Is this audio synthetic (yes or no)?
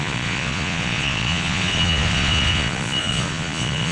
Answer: yes